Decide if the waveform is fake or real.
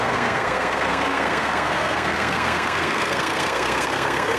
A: fake